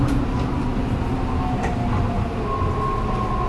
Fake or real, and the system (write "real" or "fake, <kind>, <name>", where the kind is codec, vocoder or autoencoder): real